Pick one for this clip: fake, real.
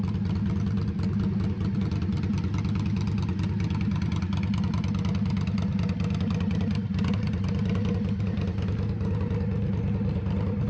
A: real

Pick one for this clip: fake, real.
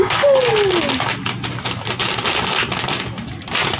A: real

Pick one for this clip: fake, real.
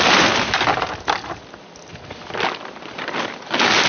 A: real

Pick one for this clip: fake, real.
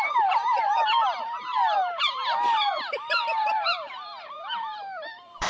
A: fake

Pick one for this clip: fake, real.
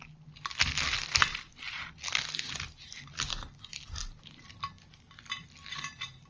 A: real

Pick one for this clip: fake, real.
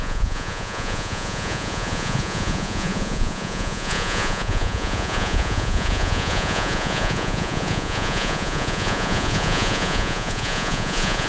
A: fake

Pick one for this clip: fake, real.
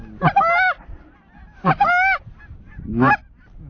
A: real